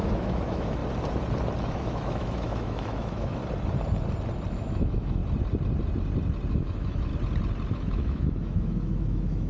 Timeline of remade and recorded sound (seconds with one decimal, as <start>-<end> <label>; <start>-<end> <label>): 0.0-0.8 remade; 0.8-1.6 recorded; 1.6-3.4 remade; 3.4-4.5 recorded; 4.5-5.2 remade; 5.2-6.5 recorded; 6.5-7.1 remade; 7.1-7.7 recorded; 7.7-9.5 remade